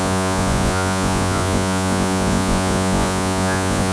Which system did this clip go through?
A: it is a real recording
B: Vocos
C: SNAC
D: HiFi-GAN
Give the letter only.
B